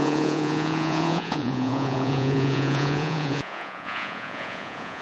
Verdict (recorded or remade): remade